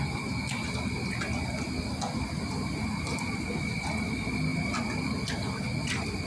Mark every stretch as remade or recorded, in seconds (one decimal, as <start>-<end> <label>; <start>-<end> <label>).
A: 0.0-6.3 recorded